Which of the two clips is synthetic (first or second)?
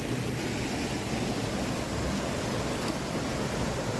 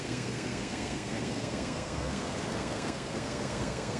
second